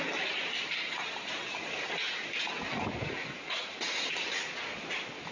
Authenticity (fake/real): real